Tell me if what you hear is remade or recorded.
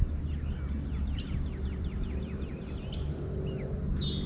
recorded